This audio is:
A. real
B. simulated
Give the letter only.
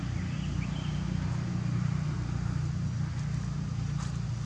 A